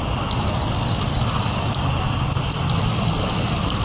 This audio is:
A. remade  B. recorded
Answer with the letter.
B